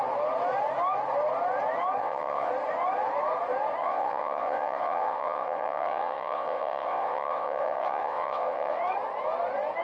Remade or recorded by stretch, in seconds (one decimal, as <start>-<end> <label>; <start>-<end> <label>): 0.0-2.0 recorded; 2.0-2.5 remade; 2.5-3.8 recorded; 3.8-8.8 remade; 8.8-9.8 recorded